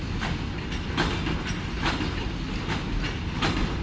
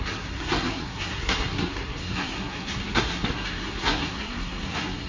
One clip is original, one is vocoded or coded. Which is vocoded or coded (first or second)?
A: second